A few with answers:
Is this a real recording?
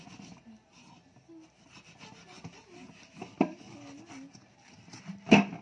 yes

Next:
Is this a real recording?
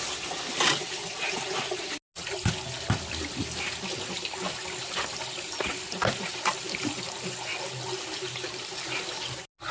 yes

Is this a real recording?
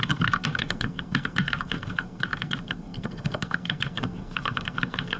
no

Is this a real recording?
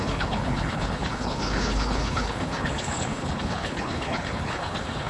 no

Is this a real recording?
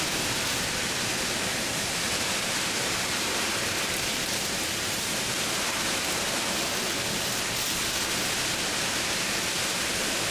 yes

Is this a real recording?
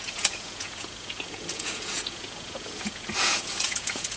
no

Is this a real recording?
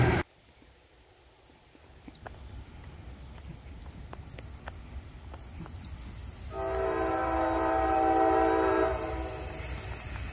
yes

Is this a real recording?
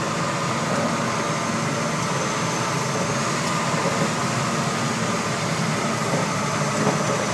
yes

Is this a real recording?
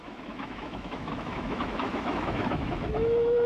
no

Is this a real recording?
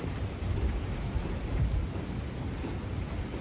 yes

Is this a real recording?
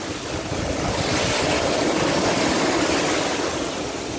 yes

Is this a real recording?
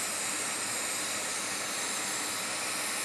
yes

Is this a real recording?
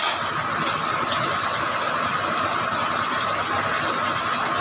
yes